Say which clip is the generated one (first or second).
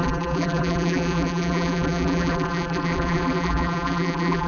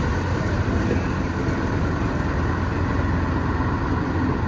first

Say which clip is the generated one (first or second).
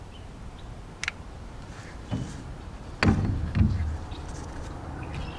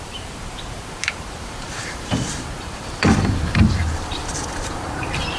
second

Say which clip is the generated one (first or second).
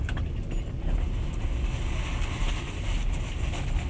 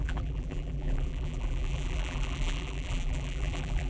second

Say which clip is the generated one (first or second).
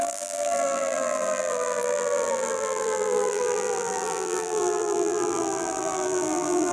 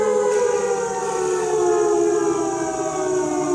first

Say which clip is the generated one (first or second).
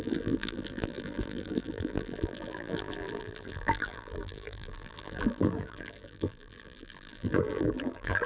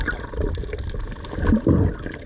first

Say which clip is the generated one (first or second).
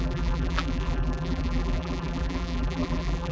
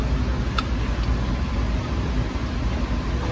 first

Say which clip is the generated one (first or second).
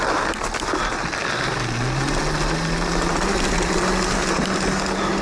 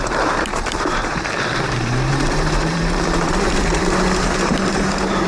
second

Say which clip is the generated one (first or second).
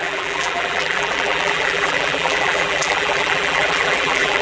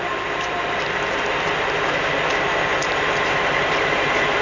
first